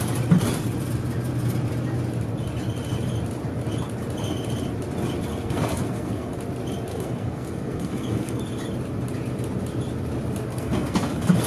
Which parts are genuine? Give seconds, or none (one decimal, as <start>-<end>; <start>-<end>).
0.0-5.3; 6.3-6.9; 8.4-10.5